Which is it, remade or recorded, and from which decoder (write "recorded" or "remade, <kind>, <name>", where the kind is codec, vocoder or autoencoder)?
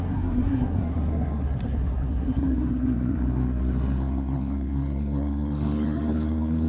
remade, codec, SNAC